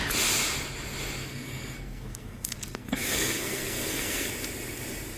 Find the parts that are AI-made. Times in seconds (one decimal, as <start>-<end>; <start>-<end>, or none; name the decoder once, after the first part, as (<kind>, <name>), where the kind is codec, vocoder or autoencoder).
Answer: 1.2-4.3 (codec, SNAC)